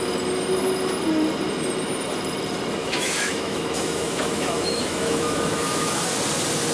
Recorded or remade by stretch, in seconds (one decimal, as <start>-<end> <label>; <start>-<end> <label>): 0.0-2.8 recorded; 2.8-6.0 remade; 6.0-6.7 recorded